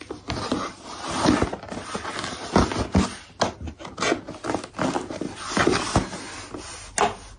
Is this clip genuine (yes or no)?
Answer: yes